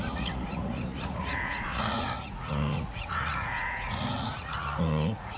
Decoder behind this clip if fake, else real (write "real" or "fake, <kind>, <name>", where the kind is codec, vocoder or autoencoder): fake, vocoder, Vocos